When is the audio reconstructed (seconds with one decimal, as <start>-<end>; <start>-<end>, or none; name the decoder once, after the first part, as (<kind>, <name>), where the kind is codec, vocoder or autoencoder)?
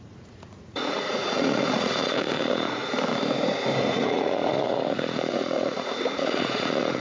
0.0-2.8 (vocoder, Vocos); 3.9-7.0